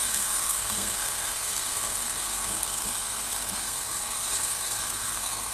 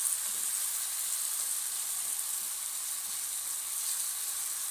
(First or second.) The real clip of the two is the second